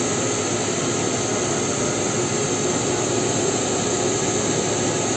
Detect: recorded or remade recorded